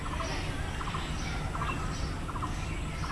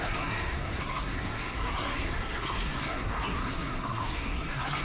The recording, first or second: first